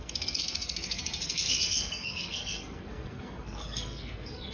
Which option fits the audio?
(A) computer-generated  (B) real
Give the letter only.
A